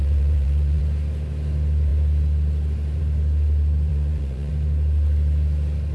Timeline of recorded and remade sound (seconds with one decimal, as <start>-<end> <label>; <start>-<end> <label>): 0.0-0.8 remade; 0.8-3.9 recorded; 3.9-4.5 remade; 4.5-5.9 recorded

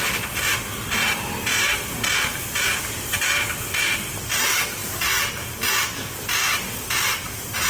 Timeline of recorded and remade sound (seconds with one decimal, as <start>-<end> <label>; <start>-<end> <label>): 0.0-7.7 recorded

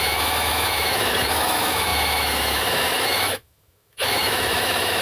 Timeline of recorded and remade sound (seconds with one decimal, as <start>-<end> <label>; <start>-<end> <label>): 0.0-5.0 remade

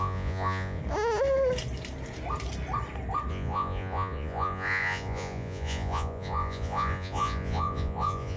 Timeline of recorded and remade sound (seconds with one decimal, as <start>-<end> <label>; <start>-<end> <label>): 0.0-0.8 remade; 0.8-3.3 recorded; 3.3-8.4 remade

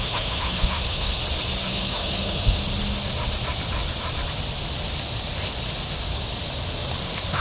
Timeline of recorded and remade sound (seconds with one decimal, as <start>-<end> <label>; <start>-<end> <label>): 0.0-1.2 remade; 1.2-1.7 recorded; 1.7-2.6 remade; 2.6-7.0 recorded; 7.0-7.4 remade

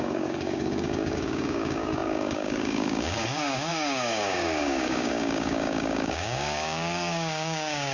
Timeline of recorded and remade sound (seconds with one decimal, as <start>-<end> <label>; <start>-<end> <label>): 0.0-7.9 remade